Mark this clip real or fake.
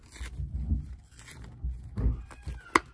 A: real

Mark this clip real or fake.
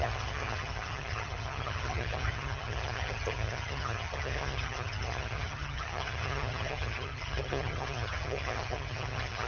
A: fake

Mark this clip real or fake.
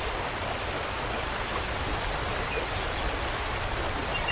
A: real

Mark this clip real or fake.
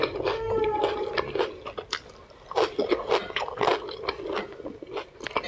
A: real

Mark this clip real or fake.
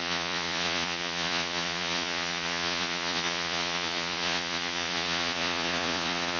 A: fake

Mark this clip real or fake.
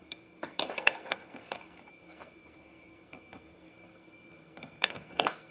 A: fake